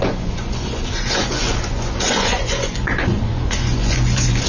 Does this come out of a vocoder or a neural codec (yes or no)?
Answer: yes